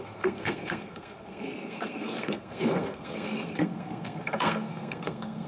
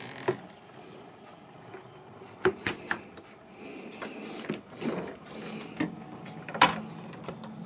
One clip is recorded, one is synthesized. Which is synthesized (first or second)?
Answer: first